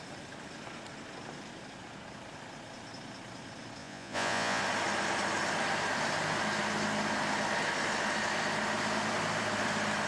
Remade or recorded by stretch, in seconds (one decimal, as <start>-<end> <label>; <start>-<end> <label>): 0.0-3.8 recorded; 3.8-4.6 remade; 4.6-10.1 recorded